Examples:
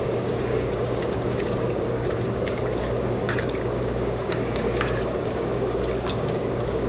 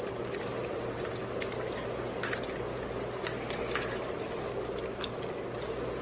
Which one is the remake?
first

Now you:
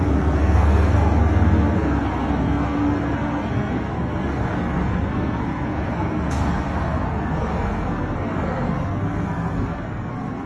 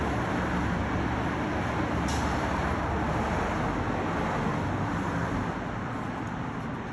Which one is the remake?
first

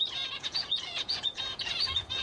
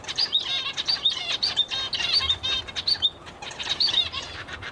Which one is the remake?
first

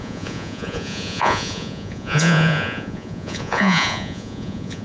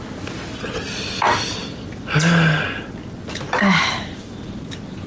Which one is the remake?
first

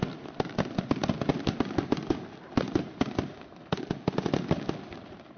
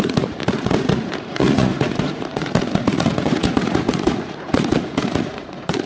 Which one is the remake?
second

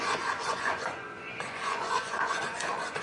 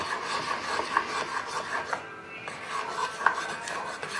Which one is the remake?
first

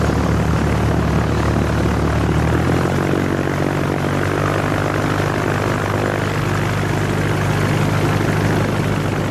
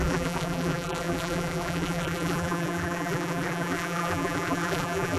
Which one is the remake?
second